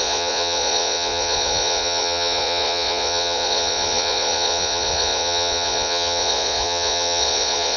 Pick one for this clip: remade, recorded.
remade